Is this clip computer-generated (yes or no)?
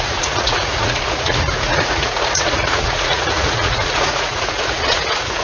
yes